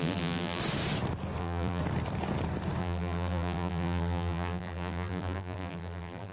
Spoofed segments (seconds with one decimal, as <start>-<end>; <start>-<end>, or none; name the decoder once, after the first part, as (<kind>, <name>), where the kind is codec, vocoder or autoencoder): 0.0-0.6 (vocoder, BigVGAN v2); 1.4-1.8; 2.8-6.3